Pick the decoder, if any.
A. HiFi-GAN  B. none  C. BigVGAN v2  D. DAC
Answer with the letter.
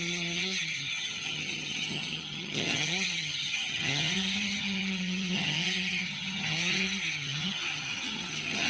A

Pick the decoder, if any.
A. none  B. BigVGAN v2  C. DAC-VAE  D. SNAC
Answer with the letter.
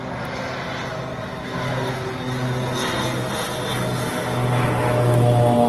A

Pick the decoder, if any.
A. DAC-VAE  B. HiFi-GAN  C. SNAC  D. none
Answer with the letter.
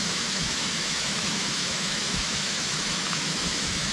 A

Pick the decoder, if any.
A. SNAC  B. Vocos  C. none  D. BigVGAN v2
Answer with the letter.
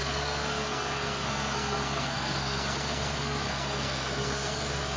A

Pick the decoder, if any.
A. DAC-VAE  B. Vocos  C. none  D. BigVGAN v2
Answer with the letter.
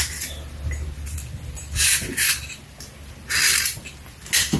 C